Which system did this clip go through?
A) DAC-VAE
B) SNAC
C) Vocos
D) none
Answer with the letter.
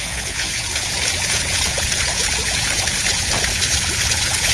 C